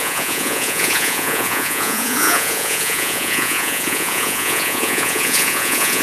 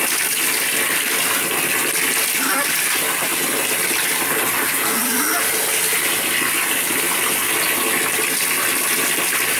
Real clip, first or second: second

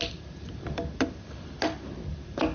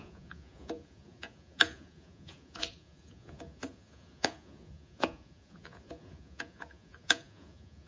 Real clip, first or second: first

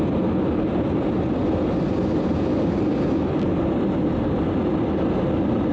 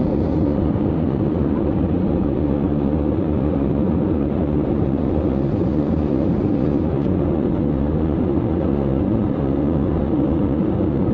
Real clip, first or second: first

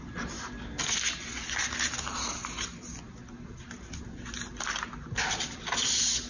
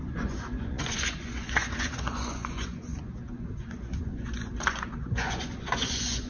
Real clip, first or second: first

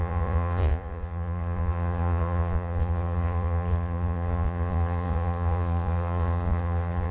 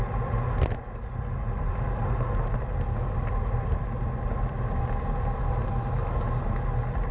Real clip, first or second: second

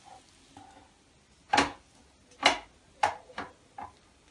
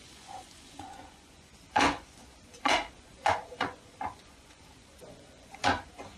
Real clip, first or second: first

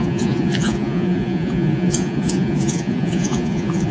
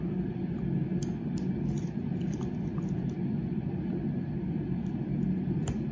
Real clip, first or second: second